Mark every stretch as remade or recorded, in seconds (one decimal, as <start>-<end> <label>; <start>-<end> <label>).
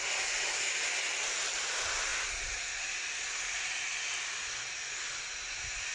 0.0-5.9 recorded